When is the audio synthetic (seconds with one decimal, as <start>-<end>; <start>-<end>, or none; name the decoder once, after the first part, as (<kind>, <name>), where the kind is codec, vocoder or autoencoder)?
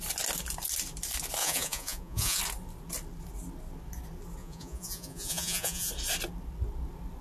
1.4-2.4 (vocoder, Vocos); 4.4-5.9